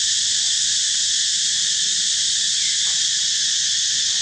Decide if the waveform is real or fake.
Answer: real